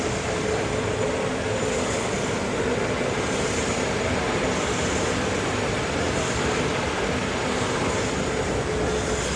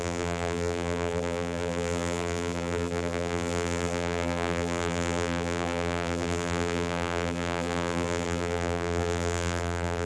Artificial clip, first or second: second